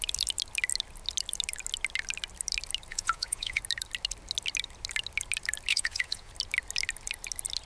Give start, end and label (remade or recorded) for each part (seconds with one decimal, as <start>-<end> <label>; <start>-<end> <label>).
0.0-2.9 recorded; 2.9-3.6 remade; 3.6-5.7 recorded; 5.7-6.3 remade; 6.3-7.7 recorded